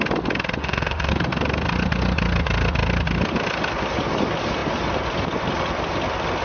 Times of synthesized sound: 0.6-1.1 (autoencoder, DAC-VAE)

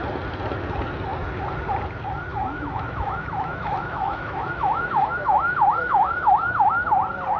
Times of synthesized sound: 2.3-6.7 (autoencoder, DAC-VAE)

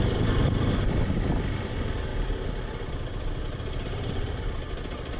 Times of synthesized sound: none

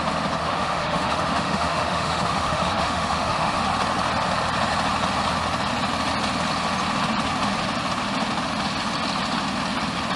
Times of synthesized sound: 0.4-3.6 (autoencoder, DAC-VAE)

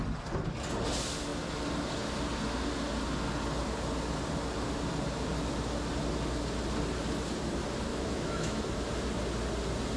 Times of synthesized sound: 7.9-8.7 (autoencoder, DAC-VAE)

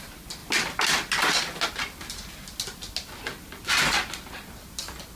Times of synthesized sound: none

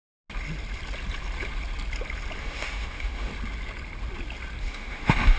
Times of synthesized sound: 2.4-3.3 (autoencoder, DAC-VAE); 4.6-5.4